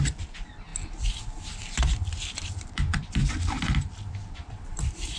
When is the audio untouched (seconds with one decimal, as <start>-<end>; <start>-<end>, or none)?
3.2-4.1